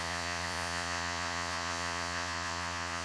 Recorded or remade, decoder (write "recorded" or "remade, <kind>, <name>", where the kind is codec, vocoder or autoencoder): remade, vocoder, Vocos